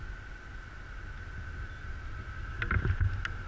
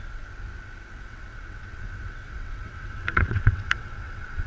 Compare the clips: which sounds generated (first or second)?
second